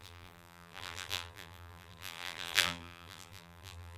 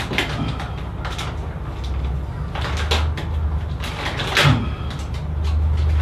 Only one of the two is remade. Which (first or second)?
first